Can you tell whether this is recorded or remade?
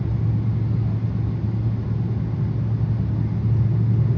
recorded